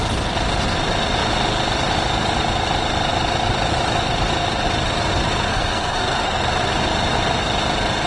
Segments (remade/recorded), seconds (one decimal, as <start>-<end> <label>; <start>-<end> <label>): 0.0-5.5 recorded; 5.5-6.4 remade; 6.4-8.1 recorded